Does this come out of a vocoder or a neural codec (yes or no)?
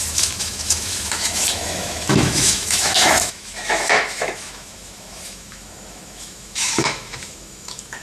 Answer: yes